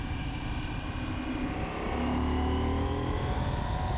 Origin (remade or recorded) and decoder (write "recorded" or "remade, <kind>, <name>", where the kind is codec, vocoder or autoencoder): recorded